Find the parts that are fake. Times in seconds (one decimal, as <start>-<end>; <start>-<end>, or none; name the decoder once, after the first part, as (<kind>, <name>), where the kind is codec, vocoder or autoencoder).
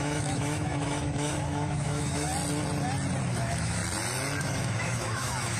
0.0-2.3 (autoencoder, DAC-VAE); 3.3-3.8; 4.4-5.6